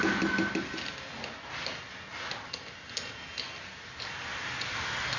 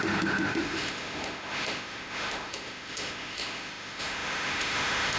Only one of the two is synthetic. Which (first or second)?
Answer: second